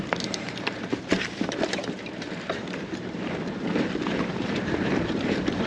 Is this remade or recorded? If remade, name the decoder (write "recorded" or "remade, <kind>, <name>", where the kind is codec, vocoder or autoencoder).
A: remade, vocoder, BigVGAN v2